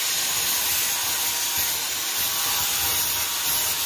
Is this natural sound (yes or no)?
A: yes